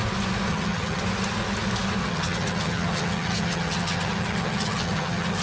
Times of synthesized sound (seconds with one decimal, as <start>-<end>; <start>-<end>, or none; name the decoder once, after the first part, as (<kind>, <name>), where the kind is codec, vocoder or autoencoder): 0.5-1.0 (vocoder, HiFi-GAN); 2.0-5.4